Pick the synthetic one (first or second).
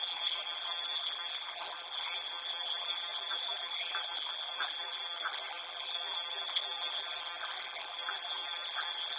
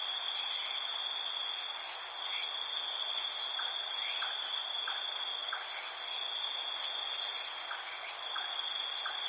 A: first